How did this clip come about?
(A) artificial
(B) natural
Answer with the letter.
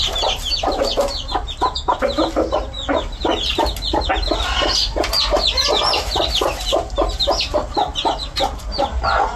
B